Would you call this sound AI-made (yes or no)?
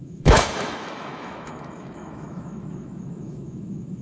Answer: yes